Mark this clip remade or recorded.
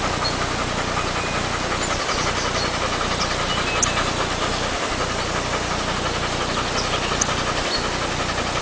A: recorded